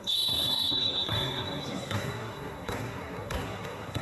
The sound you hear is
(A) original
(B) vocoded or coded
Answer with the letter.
B